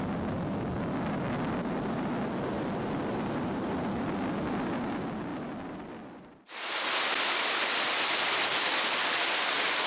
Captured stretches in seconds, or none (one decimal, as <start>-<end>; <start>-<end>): 0.0-9.9